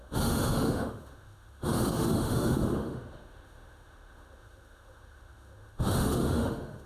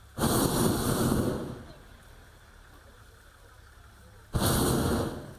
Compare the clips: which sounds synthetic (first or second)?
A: first